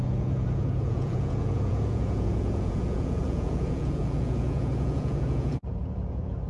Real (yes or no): no